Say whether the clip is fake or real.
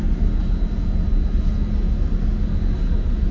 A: real